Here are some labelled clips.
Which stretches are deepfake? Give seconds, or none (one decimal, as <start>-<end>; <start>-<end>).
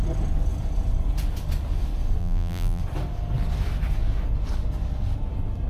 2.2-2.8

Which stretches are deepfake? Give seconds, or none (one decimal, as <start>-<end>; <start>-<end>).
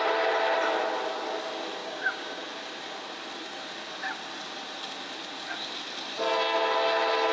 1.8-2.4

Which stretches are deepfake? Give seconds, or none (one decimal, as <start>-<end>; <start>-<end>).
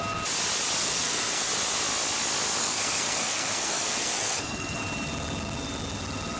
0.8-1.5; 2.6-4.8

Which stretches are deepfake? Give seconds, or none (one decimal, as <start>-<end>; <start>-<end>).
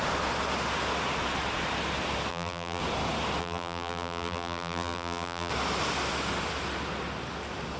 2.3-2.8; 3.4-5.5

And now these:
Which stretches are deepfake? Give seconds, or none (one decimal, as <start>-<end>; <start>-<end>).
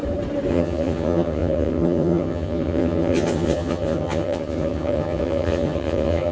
0.5-6.3